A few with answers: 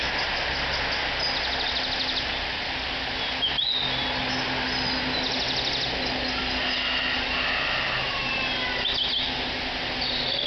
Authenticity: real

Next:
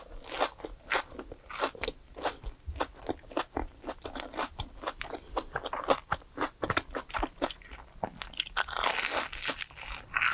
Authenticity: real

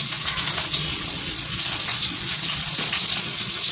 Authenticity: fake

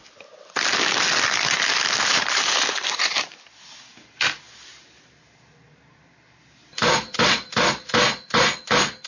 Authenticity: real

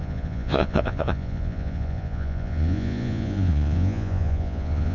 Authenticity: fake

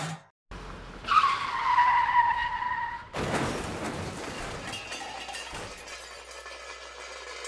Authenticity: real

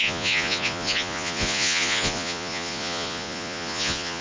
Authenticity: fake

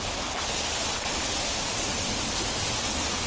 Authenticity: real